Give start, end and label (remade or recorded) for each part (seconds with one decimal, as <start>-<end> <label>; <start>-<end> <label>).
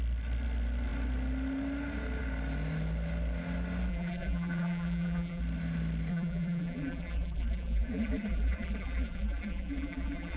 0.0-3.9 recorded; 3.9-5.4 remade; 5.4-6.1 recorded; 6.1-10.4 remade